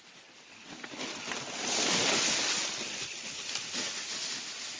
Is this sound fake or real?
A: real